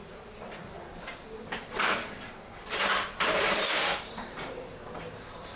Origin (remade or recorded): remade